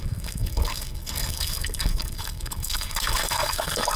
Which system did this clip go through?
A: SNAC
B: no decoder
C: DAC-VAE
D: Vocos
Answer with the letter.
A